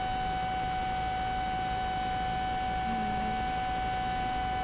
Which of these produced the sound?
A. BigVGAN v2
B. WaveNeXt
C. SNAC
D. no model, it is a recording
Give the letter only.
D